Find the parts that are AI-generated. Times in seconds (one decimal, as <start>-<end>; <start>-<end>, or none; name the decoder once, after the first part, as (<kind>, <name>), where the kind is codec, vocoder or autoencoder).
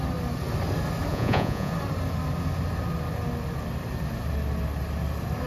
1.1-1.7 (vocoder, Vocos)